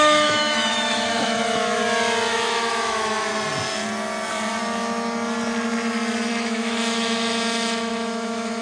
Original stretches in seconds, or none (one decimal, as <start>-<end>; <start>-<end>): 1.8-2.3; 3.3-6.3